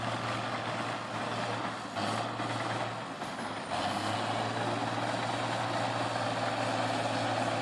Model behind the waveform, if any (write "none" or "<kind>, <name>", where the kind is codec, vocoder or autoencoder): none